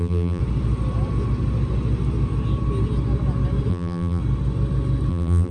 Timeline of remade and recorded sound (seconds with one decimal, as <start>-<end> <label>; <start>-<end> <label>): 0.0-0.4 remade; 0.4-3.7 recorded; 3.7-4.2 remade; 4.2-5.1 recorded; 5.1-5.5 remade